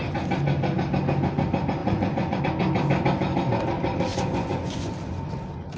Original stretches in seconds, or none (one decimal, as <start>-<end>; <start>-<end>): 0.0-1.8; 2.4-4.1; 4.9-5.8